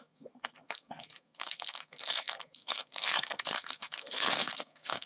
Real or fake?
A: fake